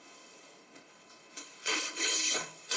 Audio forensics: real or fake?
fake